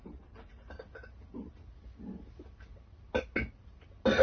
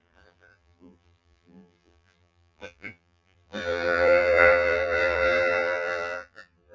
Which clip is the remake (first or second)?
second